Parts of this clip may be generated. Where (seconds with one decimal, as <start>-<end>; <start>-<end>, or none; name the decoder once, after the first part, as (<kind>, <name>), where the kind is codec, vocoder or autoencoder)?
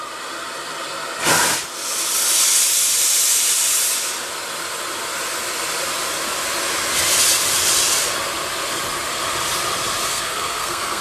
10.1-11.0 (codec, SNAC)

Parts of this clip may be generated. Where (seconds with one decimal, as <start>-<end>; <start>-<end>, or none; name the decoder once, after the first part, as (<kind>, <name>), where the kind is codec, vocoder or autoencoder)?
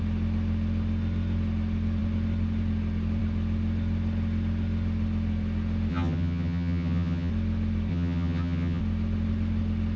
5.9-7.3 (vocoder, HiFi-GAN); 7.9-8.8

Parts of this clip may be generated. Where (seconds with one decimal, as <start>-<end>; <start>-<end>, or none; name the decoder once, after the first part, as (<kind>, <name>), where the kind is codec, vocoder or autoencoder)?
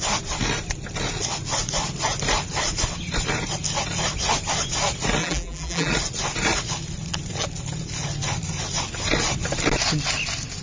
5.2-5.9 (vocoder, BigVGAN v2)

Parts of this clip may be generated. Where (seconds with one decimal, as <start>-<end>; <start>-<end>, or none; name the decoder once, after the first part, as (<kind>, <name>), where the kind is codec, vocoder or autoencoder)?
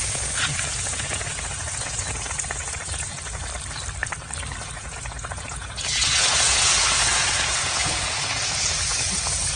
0.0-3.5 (vocoder, Vocos); 4.5-9.6